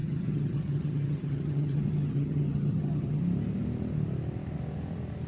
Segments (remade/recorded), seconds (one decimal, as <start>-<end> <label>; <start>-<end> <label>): 0.0-3.2 remade; 3.2-5.3 recorded